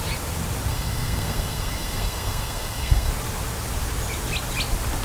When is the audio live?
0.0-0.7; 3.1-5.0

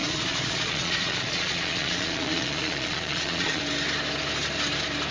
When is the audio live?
3.6-5.1

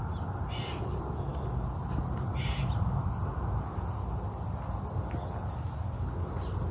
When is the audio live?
0.0-6.7